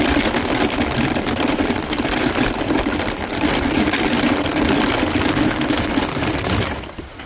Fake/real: real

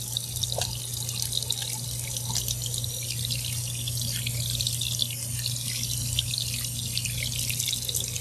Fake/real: real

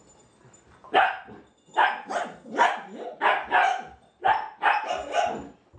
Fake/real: real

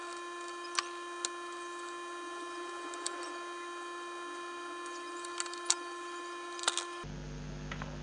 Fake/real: real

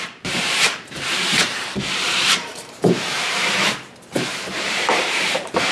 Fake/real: fake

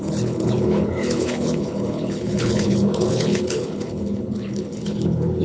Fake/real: fake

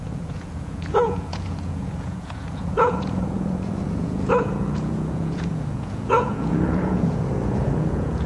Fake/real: fake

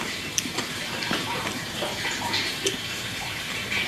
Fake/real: fake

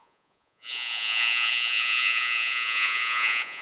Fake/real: fake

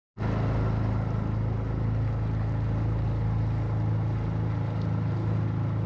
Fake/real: real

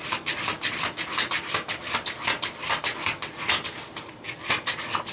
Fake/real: real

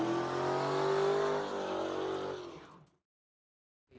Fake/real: real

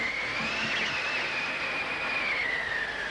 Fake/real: real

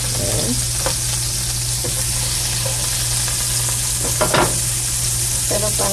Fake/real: real